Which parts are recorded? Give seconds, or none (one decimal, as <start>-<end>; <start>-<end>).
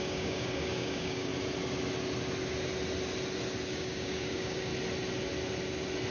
1.3-3.7; 4.7-6.1